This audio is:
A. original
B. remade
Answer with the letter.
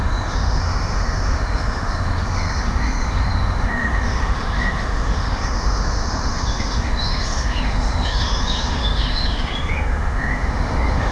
B